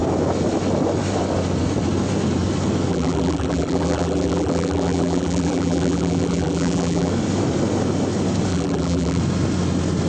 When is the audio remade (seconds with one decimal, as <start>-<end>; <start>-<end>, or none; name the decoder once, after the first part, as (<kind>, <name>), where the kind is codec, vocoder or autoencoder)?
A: 2.9-7.1 (vocoder, BigVGAN v2); 8.5-9.2